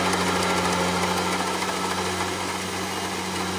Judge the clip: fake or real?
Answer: real